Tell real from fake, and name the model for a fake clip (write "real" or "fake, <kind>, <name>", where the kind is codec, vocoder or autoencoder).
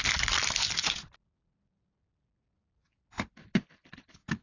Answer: real